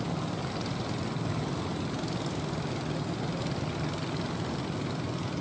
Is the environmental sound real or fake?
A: real